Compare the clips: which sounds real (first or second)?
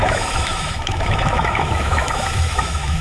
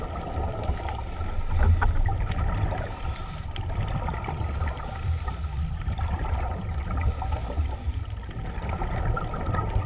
second